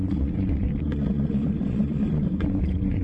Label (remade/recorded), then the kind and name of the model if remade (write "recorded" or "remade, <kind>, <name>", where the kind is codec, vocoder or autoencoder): remade, vocoder, Vocos